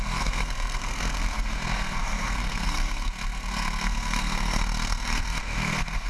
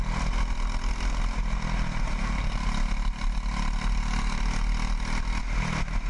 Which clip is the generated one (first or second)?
first